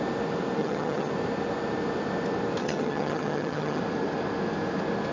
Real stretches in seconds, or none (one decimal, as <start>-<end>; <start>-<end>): 0.0-0.6; 1.1-2.6; 3.8-5.1